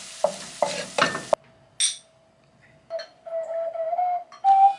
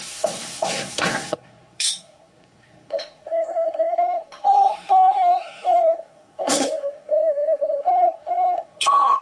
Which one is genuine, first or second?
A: first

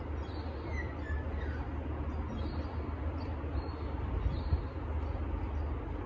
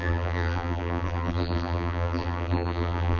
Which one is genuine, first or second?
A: first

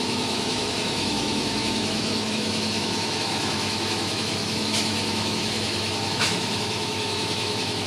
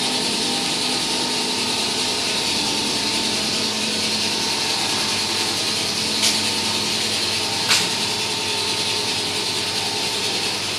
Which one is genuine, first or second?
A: second